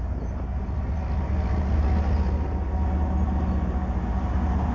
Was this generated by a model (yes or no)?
no